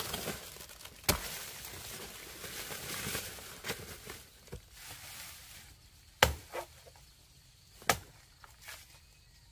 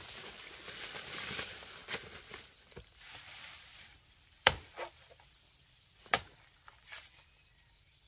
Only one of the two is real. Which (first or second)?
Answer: first